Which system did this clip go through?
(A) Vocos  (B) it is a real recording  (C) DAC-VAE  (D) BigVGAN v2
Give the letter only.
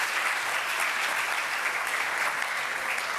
B